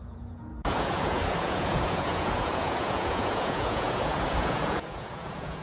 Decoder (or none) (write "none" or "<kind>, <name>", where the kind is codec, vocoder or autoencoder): vocoder, Vocos